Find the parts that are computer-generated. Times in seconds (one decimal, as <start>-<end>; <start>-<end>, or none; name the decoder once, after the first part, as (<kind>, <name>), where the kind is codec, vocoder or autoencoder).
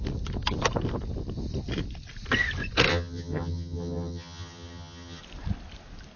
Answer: 2.9-5.2 (vocoder, HiFi-GAN)